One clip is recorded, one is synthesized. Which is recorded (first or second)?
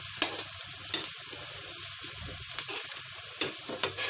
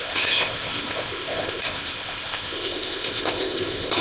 first